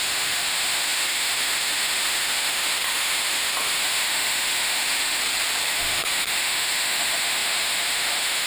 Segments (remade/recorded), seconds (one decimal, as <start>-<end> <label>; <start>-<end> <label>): 0.0-5.2 remade; 5.2-5.7 recorded; 5.7-8.5 remade